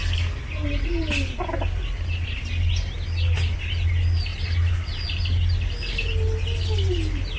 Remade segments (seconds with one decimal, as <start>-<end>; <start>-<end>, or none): none